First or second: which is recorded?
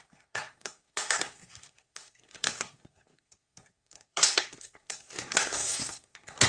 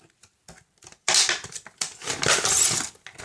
second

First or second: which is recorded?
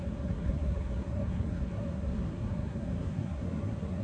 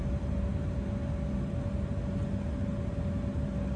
second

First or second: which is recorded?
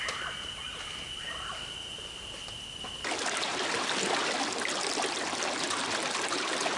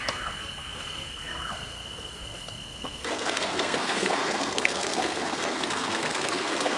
first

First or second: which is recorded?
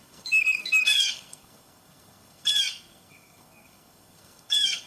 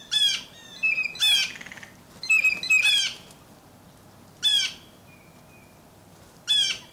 second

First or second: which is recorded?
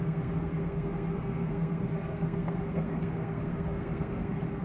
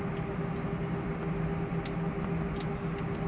second